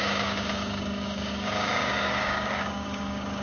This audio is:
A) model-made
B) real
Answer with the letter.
A